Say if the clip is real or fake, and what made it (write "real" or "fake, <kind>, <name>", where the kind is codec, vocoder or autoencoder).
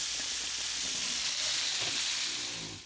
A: real